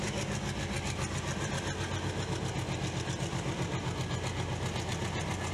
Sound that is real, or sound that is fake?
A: real